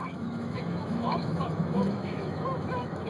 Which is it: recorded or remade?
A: remade